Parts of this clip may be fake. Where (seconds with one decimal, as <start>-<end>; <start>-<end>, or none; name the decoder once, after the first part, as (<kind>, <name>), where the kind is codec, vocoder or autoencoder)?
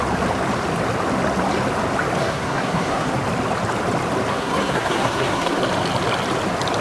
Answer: 2.2-3.1 (codec, SNAC); 4.3-5.6